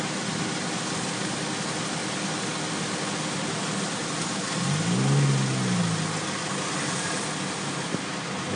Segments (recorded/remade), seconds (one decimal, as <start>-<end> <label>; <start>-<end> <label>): 0.0-8.6 recorded